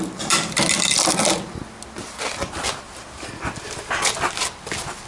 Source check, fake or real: real